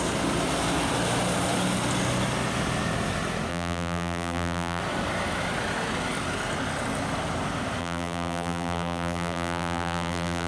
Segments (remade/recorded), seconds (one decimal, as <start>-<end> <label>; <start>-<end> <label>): 0.0-3.5 recorded; 3.5-4.8 remade; 4.8-7.8 recorded; 7.8-10.5 remade